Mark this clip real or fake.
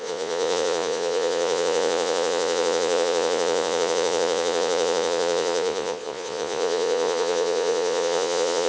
fake